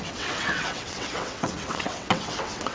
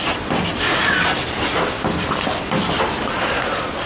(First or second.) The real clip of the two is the second